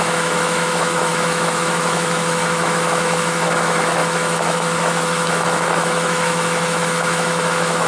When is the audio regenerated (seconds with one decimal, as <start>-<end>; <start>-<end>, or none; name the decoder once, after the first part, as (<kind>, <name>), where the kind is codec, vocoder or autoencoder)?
0.0-7.9 (autoencoder, DAC-VAE)